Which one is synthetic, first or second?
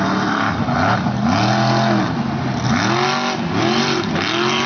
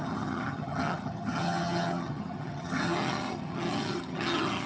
second